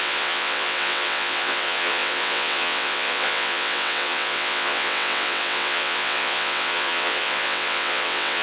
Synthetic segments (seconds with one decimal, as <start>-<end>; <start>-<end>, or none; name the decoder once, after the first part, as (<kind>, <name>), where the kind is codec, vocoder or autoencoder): 0.0-8.4 (vocoder, WaveNeXt)